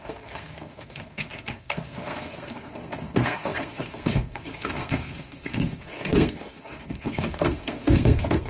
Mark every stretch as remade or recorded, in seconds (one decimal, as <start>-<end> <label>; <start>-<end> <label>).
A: 0.0-8.5 remade